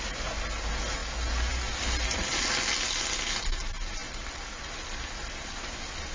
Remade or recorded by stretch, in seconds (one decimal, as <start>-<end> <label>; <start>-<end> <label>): 0.0-6.1 recorded